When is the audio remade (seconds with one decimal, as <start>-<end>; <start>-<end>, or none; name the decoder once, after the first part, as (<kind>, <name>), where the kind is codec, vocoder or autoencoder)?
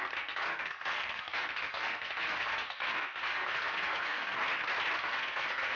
0.0-4.4 (codec, SNAC); 5.0-5.8